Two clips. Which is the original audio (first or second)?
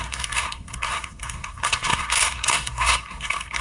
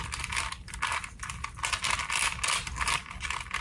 second